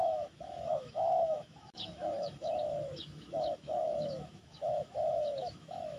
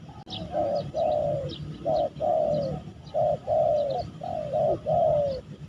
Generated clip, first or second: first